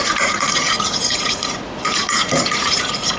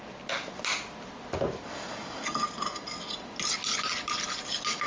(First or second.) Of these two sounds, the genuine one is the second